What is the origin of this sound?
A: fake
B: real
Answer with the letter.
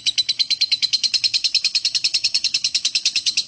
A